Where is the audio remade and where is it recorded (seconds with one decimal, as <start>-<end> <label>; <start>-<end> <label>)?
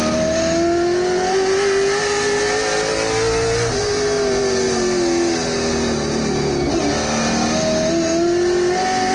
0.0-9.1 recorded